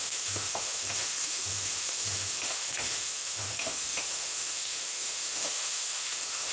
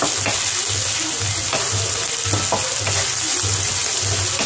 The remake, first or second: first